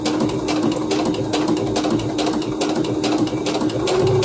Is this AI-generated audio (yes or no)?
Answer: no